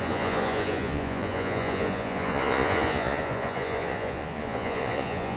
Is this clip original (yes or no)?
no